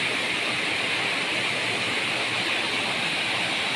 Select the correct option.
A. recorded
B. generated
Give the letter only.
A